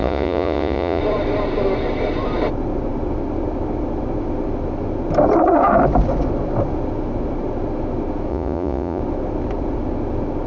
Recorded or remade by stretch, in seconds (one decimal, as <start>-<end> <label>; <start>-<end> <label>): 0.0-1.0 remade; 1.0-8.3 recorded; 8.3-9.0 remade; 9.0-10.5 recorded